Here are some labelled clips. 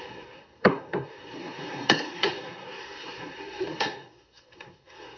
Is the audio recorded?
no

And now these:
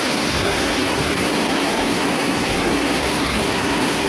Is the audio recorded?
no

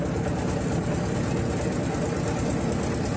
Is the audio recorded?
yes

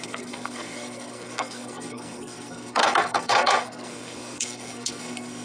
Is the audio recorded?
no